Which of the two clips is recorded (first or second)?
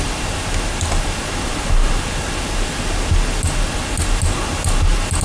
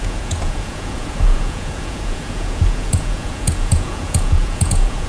first